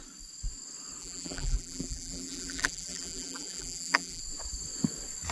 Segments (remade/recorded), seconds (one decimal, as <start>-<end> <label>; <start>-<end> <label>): 0.0-1.0 recorded; 1.0-4.2 remade; 4.2-5.3 recorded